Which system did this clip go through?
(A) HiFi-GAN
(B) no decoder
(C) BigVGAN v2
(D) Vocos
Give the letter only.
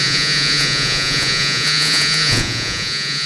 D